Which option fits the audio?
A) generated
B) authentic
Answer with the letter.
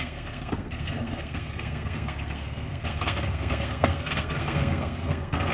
A